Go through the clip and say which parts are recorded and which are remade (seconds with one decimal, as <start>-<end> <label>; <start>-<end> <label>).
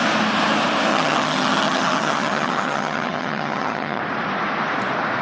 0.0-0.9 recorded; 0.9-4.0 remade; 4.0-5.2 recorded